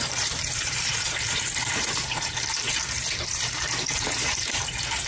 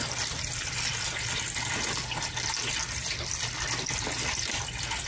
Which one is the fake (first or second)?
first